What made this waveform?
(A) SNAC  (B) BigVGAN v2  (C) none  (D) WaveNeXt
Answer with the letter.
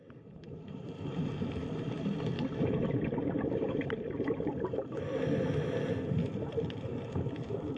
B